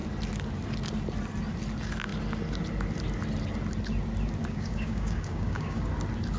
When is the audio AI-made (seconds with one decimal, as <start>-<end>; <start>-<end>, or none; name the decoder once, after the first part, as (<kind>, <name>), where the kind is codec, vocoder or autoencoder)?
4.4-5.9 (codec, DAC)